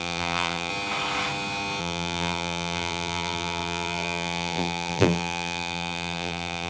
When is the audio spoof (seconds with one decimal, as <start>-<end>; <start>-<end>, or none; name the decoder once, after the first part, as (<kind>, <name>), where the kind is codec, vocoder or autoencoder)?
0.0-0.7 (vocoder, BigVGAN v2); 1.8-6.7